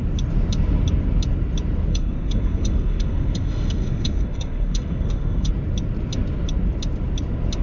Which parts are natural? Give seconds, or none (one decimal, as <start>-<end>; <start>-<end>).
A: 0.0-1.9; 5.5-7.6